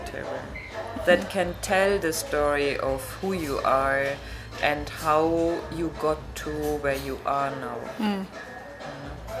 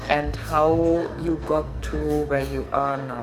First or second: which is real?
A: first